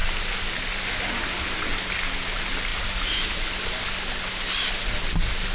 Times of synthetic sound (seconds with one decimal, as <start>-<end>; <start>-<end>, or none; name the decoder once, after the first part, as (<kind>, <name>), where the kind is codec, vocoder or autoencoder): none